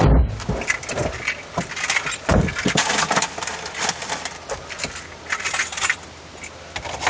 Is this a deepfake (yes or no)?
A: no